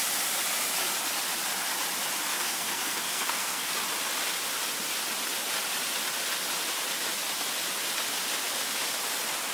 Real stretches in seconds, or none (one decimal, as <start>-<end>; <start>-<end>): 0.0-2.3; 3.7-9.5

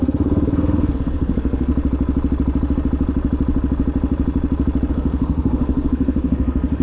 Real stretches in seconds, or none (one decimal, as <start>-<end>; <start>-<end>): 1.7-4.9

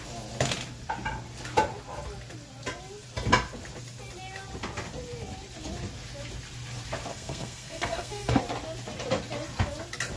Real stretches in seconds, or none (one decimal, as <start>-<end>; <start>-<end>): 0.0-7.1; 8.4-10.2

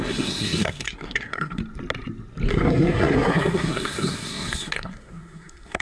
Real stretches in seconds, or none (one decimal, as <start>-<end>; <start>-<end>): 1.6-2.5

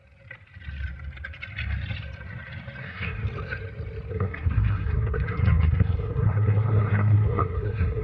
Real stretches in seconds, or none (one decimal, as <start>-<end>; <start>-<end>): 0.0-2.8; 3.2-4.1

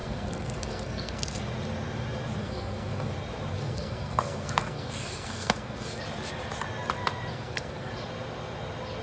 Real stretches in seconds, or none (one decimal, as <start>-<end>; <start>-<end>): 1.4-2.4; 3.1-3.5; 6.0-7.3; 7.9-9.0